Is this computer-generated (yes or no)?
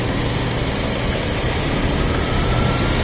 no